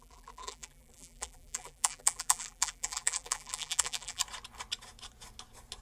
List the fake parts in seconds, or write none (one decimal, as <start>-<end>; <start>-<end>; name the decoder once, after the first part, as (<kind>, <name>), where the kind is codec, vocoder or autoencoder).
0.0-4.2 (vocoder, BigVGAN v2)